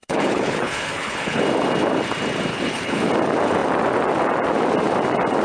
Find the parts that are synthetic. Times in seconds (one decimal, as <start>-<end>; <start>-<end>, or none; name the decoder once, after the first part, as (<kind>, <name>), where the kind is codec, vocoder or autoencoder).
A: 0.0-1.4 (codec, HILCodec); 2.5-3.1